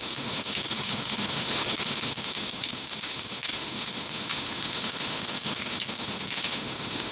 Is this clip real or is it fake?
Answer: fake